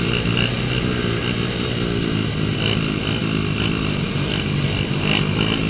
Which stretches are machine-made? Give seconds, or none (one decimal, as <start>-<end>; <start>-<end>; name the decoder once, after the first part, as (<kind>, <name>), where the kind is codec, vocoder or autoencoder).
none